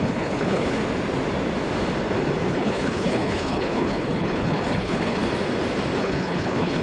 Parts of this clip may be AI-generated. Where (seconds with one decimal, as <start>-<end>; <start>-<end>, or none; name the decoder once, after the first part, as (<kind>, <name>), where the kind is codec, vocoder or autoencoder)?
0.0-0.8 (codec, HILCodec); 2.5-5.2; 6.0-6.8